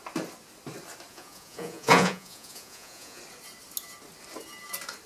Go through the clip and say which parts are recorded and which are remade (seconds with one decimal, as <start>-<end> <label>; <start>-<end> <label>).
0.0-1.1 recorded; 1.1-3.2 remade; 3.2-5.1 recorded

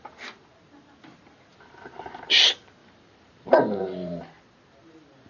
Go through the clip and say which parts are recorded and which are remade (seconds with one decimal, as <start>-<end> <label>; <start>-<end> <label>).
0.0-1.5 recorded; 1.5-2.4 remade; 2.4-2.8 recorded; 2.8-4.2 remade; 4.2-5.3 recorded

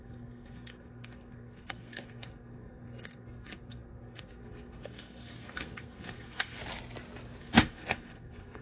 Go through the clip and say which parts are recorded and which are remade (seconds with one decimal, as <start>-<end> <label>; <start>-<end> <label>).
0.0-6.6 remade; 6.6-7.4 recorded; 7.4-8.6 remade

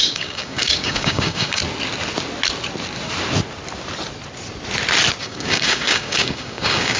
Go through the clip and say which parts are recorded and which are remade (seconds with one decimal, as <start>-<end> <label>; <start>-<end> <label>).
0.0-1.6 remade; 1.6-5.2 recorded; 5.2-7.0 remade

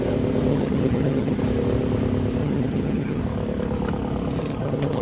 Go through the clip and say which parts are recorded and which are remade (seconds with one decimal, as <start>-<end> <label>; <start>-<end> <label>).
0.0-0.5 recorded; 0.5-1.4 remade; 1.4-2.4 recorded; 2.4-3.2 remade; 3.2-4.4 recorded; 4.4-5.0 remade